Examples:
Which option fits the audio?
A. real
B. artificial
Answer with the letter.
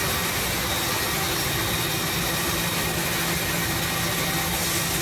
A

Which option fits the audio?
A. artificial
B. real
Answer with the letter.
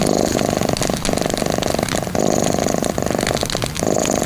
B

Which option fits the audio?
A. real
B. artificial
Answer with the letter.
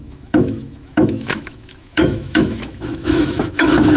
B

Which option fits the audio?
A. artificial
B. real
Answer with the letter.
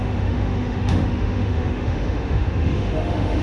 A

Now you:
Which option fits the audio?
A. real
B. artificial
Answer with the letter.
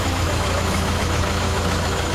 B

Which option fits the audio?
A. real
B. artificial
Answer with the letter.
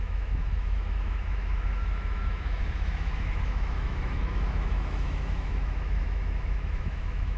B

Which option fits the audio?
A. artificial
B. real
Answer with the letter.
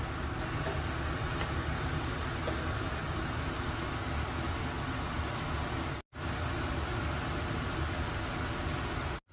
B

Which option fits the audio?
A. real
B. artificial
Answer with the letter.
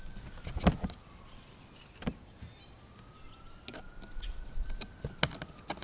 A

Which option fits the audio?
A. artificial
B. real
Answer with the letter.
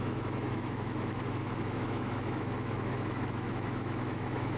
A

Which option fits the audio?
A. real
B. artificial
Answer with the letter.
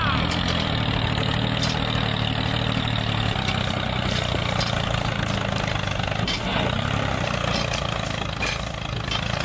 A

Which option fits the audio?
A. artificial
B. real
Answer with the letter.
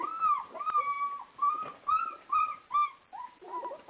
B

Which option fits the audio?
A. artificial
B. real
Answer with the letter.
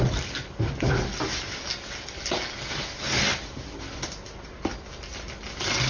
B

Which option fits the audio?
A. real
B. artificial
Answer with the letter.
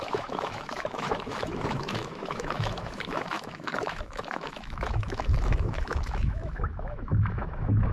B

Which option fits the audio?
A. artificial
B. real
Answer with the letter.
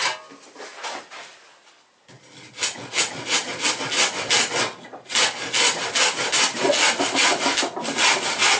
B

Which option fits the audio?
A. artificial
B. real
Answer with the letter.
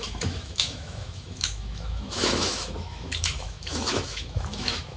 A